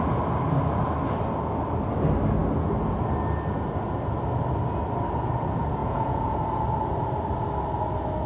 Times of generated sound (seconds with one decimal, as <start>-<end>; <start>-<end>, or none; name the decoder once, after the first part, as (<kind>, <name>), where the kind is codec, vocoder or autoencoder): 5.8-6.4 (vocoder, Vocos)